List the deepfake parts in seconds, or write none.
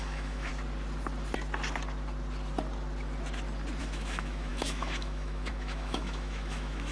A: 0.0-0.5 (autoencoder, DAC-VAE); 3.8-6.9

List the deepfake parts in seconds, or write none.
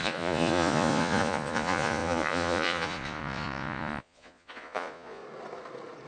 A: 0.0-5.2 (vocoder, Vocos)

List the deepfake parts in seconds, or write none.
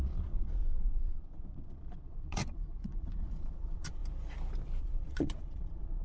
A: 0.0-4.0 (vocoder, Vocos); 4.8-6.0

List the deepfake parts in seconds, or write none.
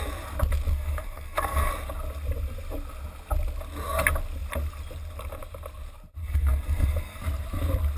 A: 0.7-1.7 (codec, SNAC); 6.2-7.2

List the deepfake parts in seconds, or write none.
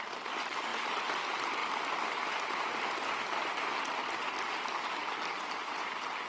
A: none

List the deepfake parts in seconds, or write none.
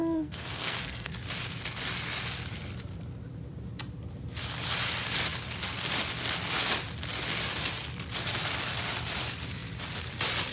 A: 0.0-1.1 (codec, SNAC)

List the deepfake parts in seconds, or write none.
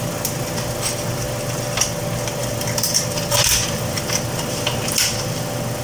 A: 2.4-5.8 (vocoder, BigVGAN v2)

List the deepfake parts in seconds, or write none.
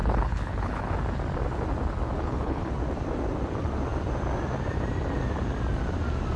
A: 0.0-0.9 (codec, HILCodec); 2.2-2.7